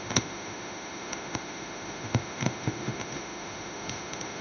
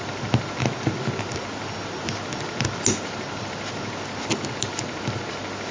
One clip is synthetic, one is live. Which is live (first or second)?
second